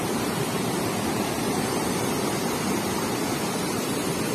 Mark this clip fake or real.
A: fake